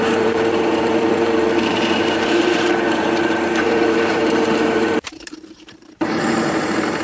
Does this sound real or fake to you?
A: fake